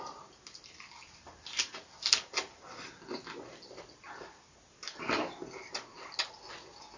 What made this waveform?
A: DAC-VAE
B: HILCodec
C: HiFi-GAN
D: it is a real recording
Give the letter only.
D